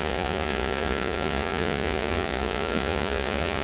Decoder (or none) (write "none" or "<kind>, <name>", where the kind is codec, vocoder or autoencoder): vocoder, Vocos